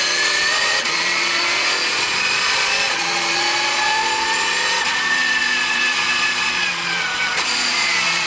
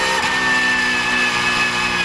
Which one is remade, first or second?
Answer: first